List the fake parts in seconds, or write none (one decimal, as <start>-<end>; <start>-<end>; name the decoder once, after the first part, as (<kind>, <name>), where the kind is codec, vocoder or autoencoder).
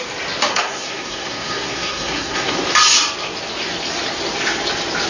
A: 0.5-2.6 (codec, SNAC)